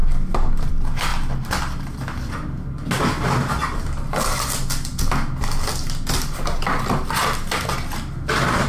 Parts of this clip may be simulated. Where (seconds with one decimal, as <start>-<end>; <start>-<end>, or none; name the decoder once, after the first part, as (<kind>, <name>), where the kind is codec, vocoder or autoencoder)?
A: none